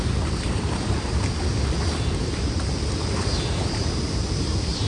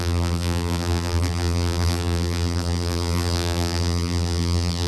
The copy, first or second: second